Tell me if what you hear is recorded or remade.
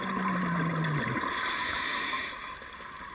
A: recorded